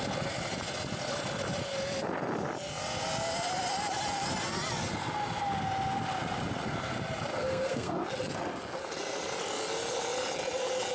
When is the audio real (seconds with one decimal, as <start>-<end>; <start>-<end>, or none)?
0.0-7.3; 7.9-10.9